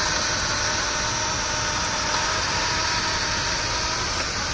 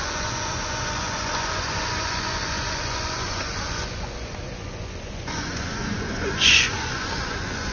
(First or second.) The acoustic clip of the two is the first